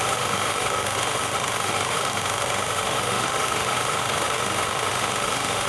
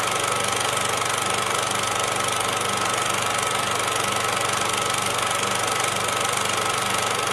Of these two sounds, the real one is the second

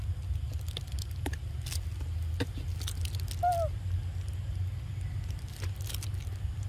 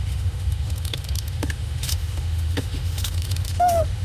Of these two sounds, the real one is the first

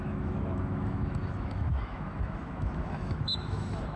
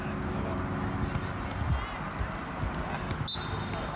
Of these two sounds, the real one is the second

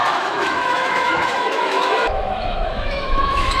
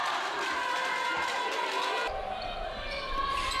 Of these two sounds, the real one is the second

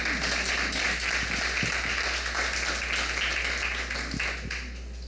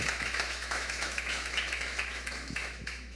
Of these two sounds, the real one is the first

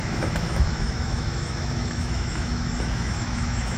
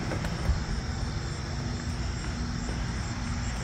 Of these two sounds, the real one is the second